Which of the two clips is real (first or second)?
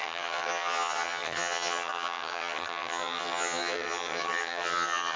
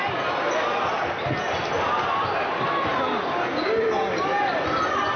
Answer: second